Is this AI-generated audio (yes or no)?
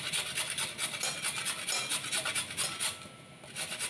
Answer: no